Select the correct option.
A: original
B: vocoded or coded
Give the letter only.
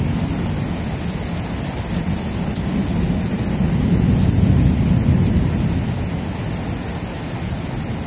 A